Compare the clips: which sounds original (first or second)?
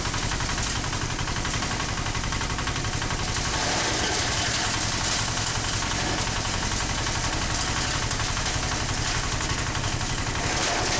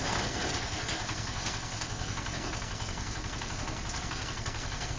first